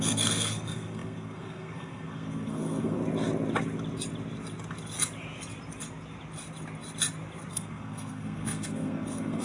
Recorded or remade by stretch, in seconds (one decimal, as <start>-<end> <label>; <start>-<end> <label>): 0.0-3.0 remade; 3.0-7.5 recorded; 7.5-9.4 remade